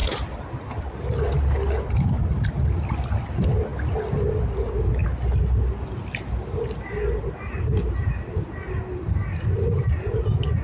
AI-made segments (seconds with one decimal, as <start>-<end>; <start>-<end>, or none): none